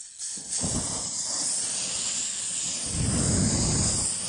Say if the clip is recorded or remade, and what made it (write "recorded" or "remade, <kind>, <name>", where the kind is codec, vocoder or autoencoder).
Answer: recorded